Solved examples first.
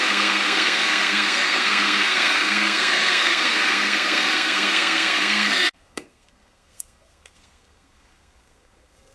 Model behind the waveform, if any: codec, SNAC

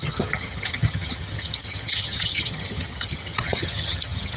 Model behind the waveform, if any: vocoder, HiFi-GAN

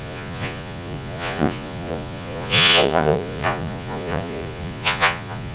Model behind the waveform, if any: vocoder, Vocos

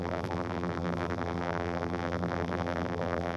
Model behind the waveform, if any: vocoder, BigVGAN v2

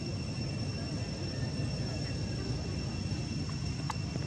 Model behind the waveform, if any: none